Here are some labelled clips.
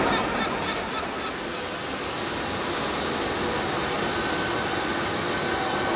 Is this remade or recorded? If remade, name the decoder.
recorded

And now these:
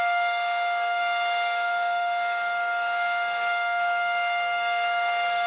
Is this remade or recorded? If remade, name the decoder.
remade, codec, DAC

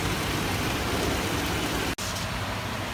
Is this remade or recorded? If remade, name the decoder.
recorded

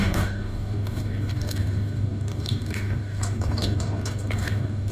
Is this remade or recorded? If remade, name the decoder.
remade, codec, DAC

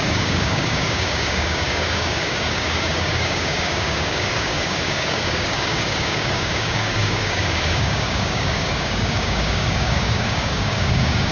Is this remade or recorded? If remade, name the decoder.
remade, codec, DAC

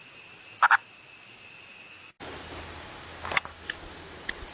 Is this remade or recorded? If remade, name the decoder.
recorded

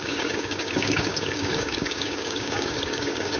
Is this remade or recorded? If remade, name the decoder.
remade, codec, DAC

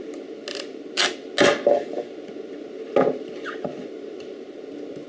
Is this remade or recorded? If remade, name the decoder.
recorded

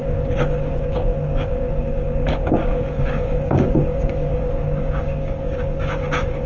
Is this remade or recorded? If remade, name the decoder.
remade, codec, DAC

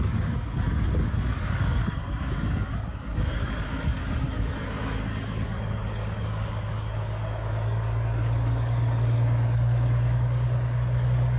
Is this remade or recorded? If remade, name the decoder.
remade, codec, DAC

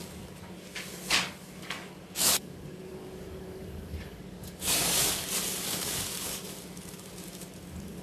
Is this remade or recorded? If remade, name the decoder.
remade, codec, DAC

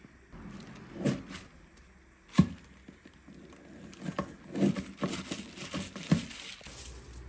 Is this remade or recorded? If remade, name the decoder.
recorded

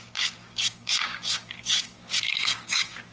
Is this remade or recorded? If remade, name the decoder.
remade, codec, DAC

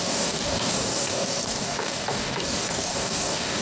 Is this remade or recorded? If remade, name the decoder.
remade, codec, DAC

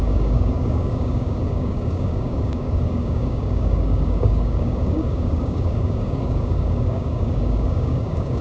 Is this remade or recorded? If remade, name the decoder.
remade, codec, DAC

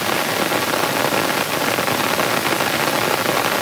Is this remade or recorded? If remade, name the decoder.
recorded